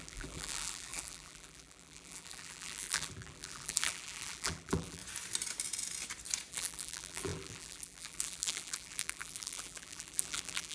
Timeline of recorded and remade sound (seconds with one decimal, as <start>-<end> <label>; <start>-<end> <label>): 0.0-5.0 remade; 5.0-6.5 recorded; 6.5-10.7 remade